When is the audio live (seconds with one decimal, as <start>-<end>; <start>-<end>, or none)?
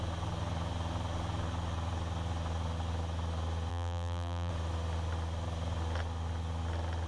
0.0-3.7; 4.5-7.1